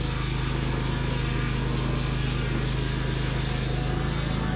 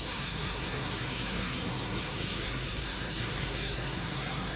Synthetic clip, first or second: second